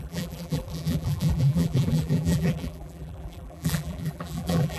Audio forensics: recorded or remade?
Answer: remade